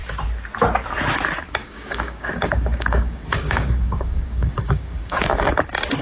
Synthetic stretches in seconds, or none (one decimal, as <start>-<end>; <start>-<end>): 1.6-5.2